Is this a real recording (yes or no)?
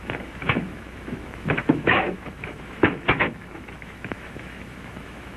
no